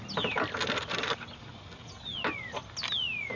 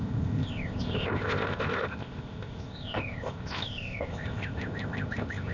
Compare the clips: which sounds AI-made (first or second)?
second